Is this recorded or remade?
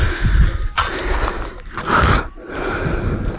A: recorded